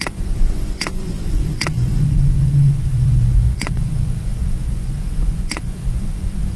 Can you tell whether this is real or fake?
fake